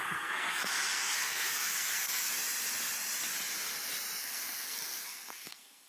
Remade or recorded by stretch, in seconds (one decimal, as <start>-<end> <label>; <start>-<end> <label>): 0.0-2.3 remade; 2.3-4.2 recorded; 4.2-5.9 remade